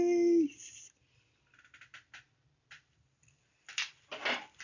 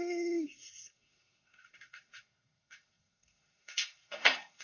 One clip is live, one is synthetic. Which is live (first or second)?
first